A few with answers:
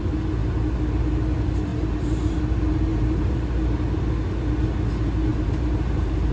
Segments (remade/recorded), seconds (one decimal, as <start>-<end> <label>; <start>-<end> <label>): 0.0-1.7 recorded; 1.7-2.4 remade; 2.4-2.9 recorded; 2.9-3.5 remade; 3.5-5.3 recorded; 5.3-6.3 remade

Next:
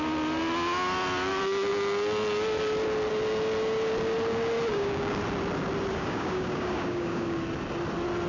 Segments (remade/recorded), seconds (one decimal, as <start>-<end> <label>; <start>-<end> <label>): 0.0-4.7 recorded; 4.7-5.2 remade; 5.2-5.9 recorded; 5.9-7.4 remade; 7.4-8.3 recorded

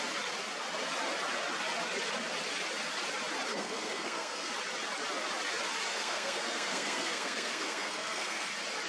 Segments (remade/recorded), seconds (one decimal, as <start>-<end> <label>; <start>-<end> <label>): 0.0-3.5 recorded; 3.5-4.5 remade; 4.5-5.9 recorded; 5.9-8.5 remade; 8.5-8.9 recorded